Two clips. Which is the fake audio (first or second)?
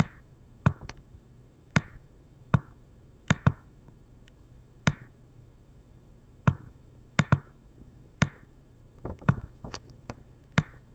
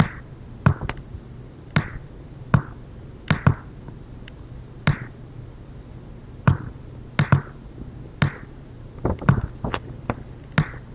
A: first